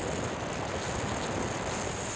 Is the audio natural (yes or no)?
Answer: yes